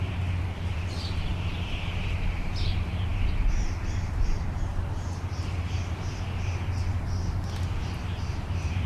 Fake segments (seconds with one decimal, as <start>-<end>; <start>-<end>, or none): 0.0-1.3; 2.0-4.7; 8.3-8.9